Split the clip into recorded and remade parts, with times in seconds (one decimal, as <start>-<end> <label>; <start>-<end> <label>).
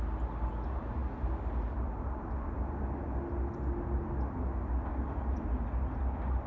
0.0-6.5 recorded